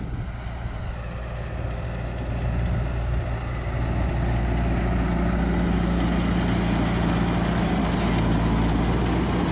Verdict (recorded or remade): recorded